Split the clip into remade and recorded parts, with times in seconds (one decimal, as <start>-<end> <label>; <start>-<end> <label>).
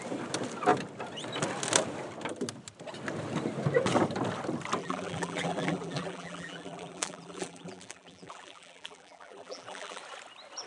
0.0-4.8 recorded; 4.8-10.0 remade; 10.0-10.7 recorded